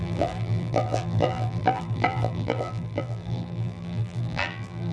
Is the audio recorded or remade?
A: remade